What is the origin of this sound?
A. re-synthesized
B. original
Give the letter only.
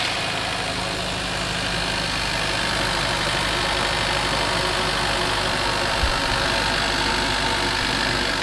B